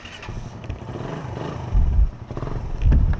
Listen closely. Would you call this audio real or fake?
real